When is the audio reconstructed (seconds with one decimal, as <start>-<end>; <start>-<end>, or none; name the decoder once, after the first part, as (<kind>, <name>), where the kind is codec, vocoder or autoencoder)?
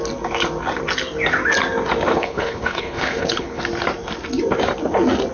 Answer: 2.1-3.6 (codec, HILCodec)